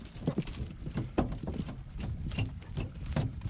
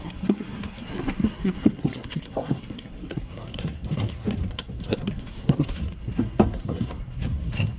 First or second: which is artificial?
second